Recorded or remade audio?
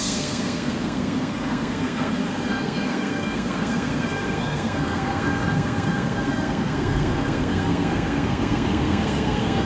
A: remade